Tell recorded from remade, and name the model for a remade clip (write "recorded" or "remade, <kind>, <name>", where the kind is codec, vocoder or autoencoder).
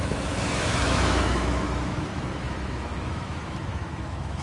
remade, autoencoder, DAC-VAE